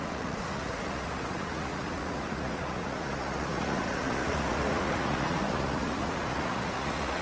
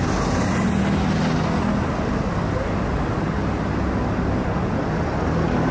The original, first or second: second